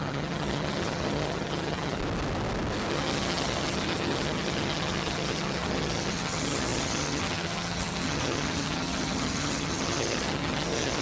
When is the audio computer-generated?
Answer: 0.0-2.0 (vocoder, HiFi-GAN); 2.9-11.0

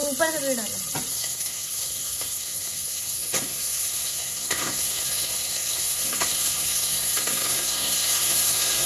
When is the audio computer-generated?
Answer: 1.1-8.9 (codec, SNAC)

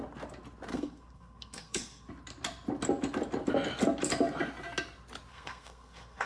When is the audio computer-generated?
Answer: 0.7-2.1 (codec, SNAC); 5.3-6.3

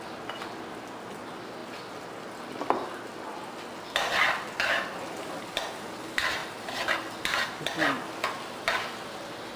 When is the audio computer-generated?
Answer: none